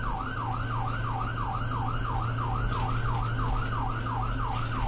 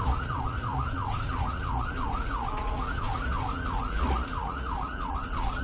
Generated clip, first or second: second